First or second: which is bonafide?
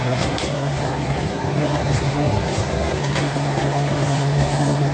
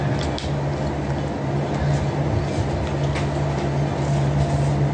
second